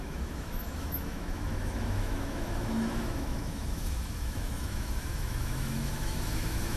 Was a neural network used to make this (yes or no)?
yes